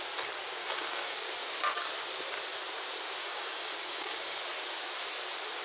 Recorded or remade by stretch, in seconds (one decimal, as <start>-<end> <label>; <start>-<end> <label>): 0.0-0.6 recorded; 0.6-1.3 remade; 1.3-3.2 recorded; 3.2-4.4 remade; 4.4-5.6 recorded